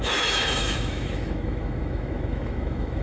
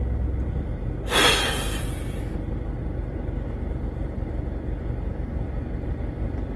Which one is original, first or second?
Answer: second